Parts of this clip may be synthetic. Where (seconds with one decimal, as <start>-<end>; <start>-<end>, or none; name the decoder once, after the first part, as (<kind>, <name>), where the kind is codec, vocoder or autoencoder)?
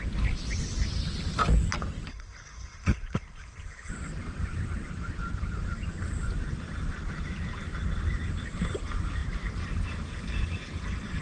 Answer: 2.1-3.9 (codec, HILCodec)